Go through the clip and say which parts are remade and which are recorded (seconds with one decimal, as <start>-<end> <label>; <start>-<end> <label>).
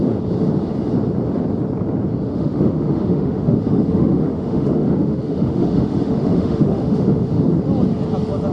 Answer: 0.0-2.3 recorded; 2.3-7.4 remade; 7.4-8.5 recorded